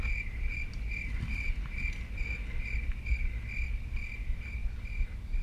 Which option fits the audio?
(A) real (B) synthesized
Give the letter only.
A